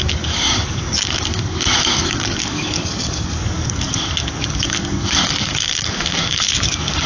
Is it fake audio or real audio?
fake